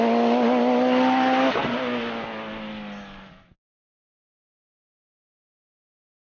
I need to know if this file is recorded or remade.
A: recorded